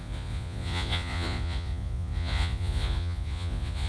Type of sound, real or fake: fake